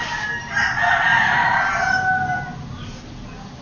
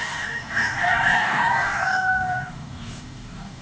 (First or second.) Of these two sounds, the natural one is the first